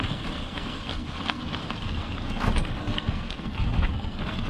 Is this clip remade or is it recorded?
remade